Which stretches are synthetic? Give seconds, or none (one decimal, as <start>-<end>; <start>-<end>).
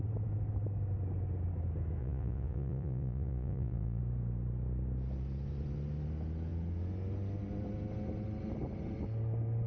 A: 2.0-4.0